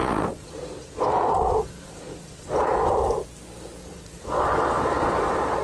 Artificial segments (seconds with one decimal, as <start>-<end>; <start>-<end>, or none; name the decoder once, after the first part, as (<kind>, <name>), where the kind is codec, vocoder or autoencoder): 0.0-3.0 (vocoder, Vocos); 3.8-5.6